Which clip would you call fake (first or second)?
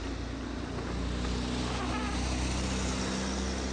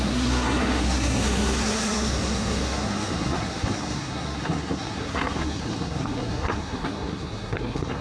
second